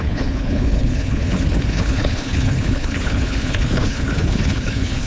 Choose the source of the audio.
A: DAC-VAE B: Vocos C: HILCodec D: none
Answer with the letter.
C